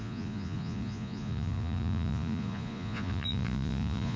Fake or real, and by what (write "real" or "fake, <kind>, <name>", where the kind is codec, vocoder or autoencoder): fake, vocoder, Vocos